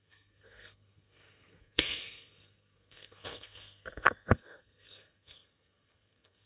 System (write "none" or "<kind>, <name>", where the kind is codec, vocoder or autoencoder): codec, SNAC